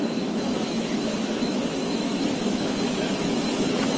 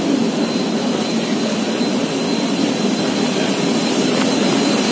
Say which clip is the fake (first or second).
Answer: first